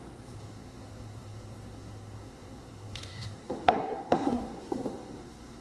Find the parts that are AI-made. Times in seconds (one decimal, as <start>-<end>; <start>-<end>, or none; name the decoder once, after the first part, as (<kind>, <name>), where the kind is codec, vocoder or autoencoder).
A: 0.0-5.6 (codec, SNAC)